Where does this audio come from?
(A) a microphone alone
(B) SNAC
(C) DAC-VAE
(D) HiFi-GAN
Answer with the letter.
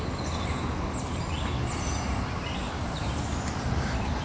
A